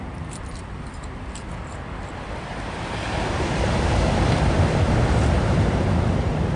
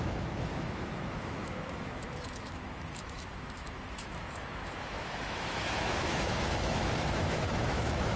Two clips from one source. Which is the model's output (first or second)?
second